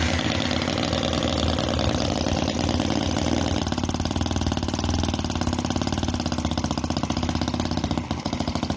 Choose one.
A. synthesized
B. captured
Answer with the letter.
B